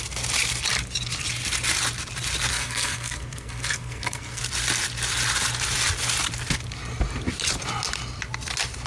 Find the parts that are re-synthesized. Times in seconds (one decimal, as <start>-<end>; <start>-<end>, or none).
2.5-4.4